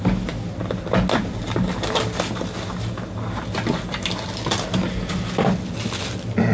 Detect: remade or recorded recorded